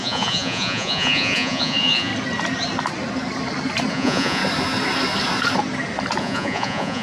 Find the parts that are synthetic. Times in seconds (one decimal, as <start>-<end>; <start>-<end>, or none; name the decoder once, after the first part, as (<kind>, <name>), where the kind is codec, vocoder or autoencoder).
0.0-2.1 (vocoder, Vocos); 3.9-4.4; 6.2-7.0